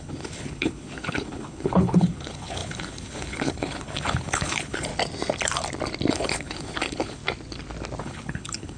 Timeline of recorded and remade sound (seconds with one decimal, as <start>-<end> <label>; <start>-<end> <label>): 0.0-4.9 remade; 4.9-6.1 recorded; 6.1-7.2 remade; 7.2-8.0 recorded; 8.0-8.8 remade